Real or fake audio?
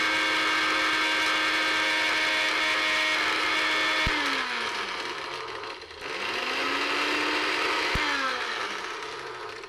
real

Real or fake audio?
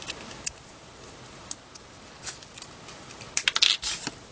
real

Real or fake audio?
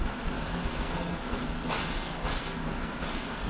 fake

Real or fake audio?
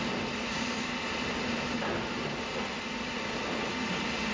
real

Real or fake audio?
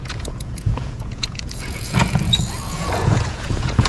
fake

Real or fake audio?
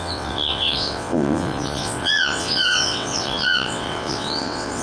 fake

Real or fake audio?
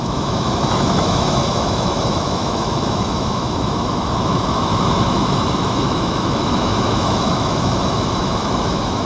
fake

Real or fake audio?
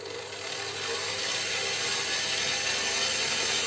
real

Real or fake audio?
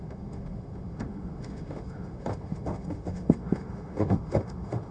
fake